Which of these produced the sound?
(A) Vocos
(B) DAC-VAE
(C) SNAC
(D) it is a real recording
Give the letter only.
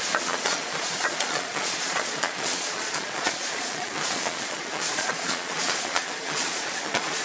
A